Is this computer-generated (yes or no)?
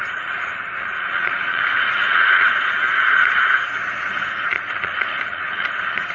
yes